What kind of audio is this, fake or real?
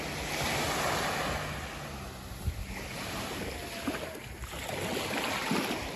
real